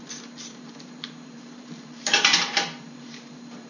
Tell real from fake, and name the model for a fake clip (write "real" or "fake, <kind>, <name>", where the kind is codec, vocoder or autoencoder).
fake, vocoder, BigVGAN v2